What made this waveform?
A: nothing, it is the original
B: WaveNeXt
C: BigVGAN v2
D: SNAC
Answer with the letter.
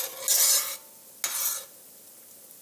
A